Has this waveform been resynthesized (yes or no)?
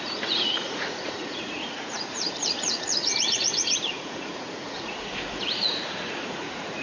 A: yes